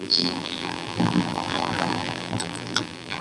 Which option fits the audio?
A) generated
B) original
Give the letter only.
A